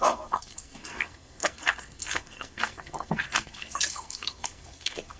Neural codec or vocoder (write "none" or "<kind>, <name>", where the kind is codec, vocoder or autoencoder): codec, SNAC